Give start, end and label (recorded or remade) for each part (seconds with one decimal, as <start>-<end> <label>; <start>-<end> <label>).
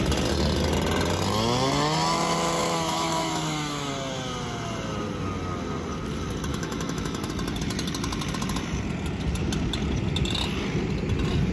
0.0-2.6 recorded; 2.6-3.9 remade; 3.9-6.5 recorded; 6.5-7.3 remade; 7.3-11.5 recorded